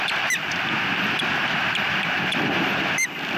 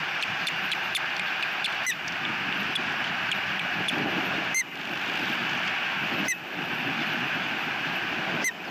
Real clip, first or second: second